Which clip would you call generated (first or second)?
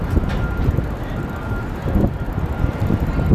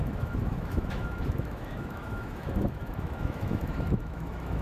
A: second